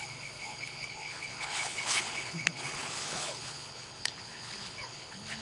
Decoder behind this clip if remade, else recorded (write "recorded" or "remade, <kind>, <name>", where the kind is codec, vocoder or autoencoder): remade, codec, HILCodec